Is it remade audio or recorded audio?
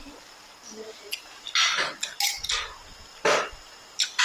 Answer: recorded